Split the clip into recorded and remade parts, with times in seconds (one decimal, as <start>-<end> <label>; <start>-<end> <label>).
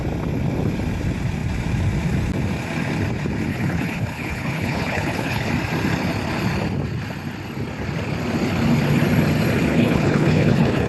0.0-3.5 recorded; 3.5-5.5 remade; 5.5-9.7 recorded; 9.7-10.9 remade